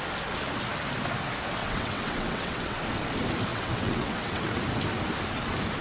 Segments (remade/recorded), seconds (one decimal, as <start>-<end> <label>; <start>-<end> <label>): 0.0-1.6 recorded; 1.6-2.8 remade; 2.8-3.5 recorded; 3.5-4.6 remade; 4.6-5.8 recorded